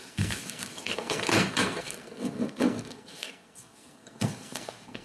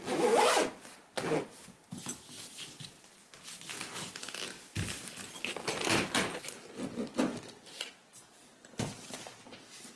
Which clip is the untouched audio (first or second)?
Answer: second